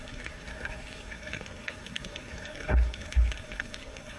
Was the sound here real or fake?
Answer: fake